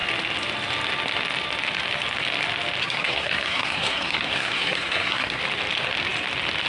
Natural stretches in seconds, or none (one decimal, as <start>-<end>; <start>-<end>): 0.0-2.8; 5.4-6.7